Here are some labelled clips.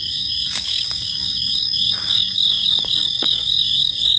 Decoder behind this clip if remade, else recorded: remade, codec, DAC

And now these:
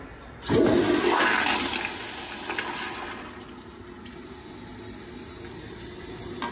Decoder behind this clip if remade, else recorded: recorded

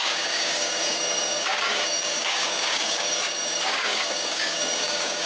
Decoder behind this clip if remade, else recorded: remade, codec, DAC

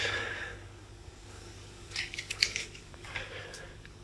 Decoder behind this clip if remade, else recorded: remade, codec, DAC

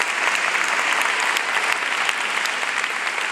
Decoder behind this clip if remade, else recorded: recorded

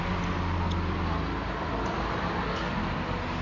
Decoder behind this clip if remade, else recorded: recorded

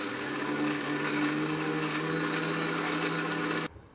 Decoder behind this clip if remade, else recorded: remade, codec, DAC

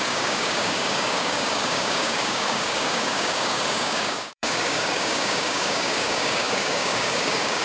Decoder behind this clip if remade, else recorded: remade, codec, DAC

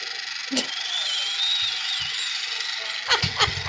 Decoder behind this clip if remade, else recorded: recorded